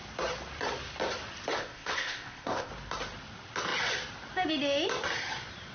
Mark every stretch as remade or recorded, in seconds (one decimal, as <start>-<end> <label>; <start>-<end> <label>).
0.0-1.6 recorded; 1.6-2.7 remade; 2.7-5.7 recorded